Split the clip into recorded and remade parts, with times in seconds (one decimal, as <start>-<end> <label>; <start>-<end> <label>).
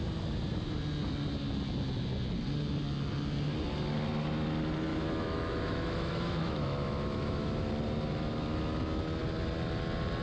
0.0-4.9 recorded; 4.9-7.7 remade; 7.7-10.2 recorded